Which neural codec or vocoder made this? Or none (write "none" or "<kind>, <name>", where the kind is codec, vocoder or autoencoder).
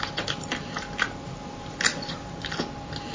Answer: vocoder, BigVGAN v2